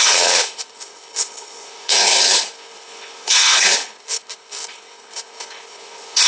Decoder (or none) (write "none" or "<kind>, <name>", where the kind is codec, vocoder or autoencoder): codec, HILCodec